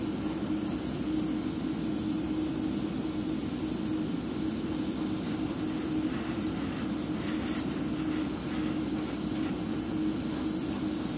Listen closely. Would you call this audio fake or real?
real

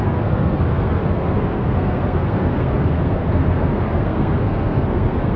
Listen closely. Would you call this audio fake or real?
fake